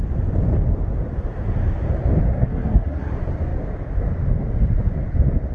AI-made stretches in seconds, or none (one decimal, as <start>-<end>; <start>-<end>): 2.3-3.1

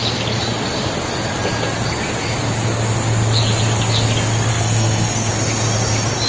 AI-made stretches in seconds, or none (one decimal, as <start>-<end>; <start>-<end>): 4.5-5.3

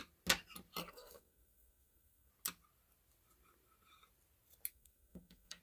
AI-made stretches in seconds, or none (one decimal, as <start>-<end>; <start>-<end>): 0.8-2.3; 4.7-5.6

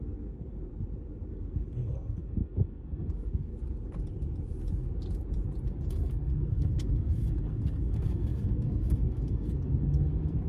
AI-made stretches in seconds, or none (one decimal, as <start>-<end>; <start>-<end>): 0.0-0.7; 1.3-3.5; 5.9-10.5

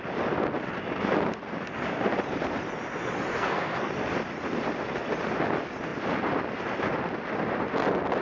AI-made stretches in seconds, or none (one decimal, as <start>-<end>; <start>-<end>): 3.3-3.9

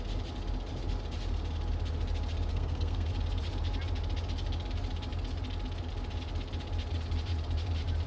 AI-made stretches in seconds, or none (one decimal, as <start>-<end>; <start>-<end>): 2.5-3.1

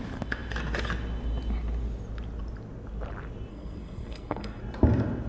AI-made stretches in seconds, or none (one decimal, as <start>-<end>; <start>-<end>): 3.5-4.6